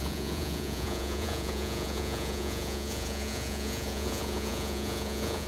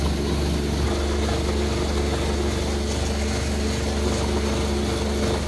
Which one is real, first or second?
second